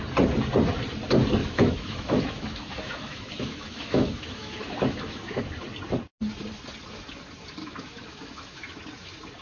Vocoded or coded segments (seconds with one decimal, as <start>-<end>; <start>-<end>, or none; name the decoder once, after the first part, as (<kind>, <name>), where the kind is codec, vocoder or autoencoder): 1.4-5.4 (autoencoder, DAC-VAE); 7.6-8.8